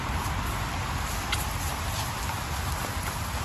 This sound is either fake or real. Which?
real